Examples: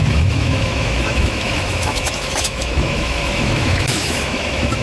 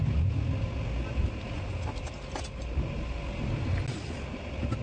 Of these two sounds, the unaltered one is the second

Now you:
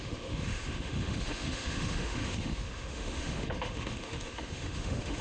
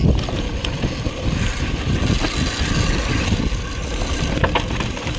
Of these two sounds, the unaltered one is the second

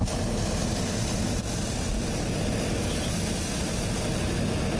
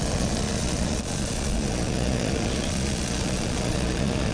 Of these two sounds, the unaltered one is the first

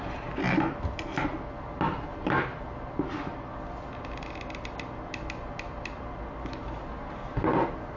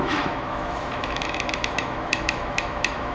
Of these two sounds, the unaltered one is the first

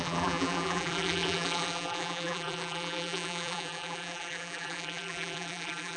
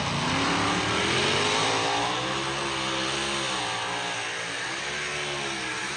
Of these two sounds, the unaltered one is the second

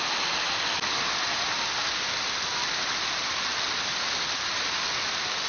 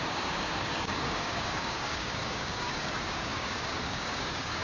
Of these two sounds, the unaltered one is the first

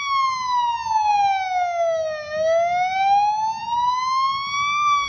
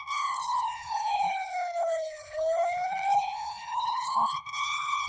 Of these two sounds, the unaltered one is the first